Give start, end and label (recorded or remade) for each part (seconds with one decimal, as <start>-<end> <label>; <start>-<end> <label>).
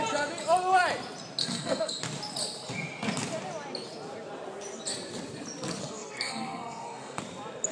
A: 0.0-1.4 recorded; 1.4-2.0 remade; 2.0-5.8 recorded; 5.8-7.2 remade; 7.2-7.7 recorded